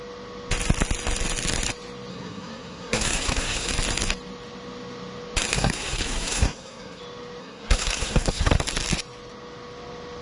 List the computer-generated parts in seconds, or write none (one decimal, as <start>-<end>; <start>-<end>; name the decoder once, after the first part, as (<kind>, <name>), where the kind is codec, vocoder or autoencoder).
2.1-3.7 (codec, SNAC); 5.5-7.0; 7.4-8.5